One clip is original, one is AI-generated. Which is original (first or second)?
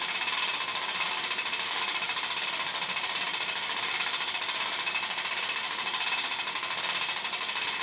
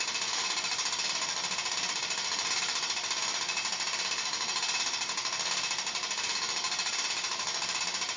second